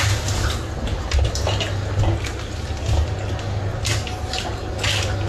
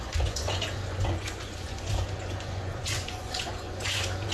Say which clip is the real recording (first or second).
first